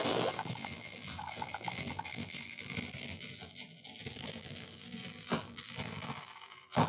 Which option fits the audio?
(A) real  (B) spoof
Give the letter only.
B